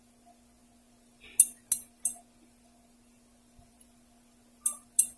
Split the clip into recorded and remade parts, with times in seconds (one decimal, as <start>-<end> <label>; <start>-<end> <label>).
0.0-5.2 recorded